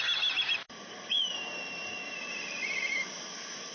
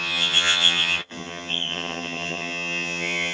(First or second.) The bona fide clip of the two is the first